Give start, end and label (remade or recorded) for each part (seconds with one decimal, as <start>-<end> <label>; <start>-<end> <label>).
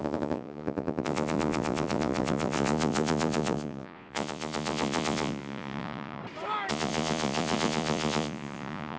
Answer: 0.0-6.2 remade; 6.2-6.7 recorded; 6.7-9.0 remade